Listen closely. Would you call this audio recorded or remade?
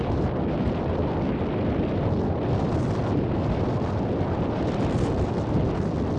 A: recorded